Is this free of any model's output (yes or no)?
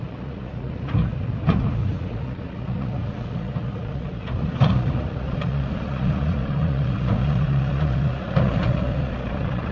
no